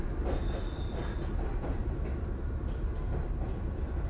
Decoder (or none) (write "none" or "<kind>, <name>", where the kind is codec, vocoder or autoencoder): none